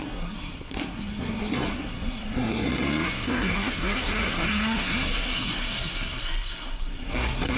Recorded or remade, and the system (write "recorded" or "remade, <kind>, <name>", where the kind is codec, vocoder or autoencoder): remade, codec, SNAC